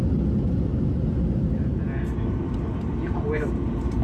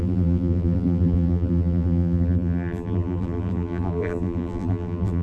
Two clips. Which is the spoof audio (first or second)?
second